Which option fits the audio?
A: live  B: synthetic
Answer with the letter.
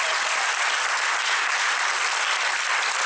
B